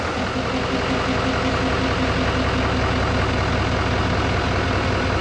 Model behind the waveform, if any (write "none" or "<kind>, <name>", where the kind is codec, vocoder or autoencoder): none